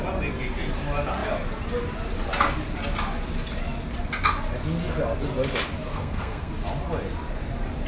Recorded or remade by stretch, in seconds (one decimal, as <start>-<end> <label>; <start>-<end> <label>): 0.0-5.9 recorded; 5.9-6.5 remade; 6.5-7.9 recorded